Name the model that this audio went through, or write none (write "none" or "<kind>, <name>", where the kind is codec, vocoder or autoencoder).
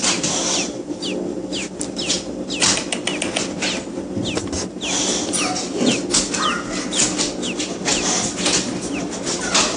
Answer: none